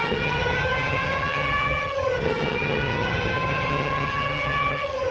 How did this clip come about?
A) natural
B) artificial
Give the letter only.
B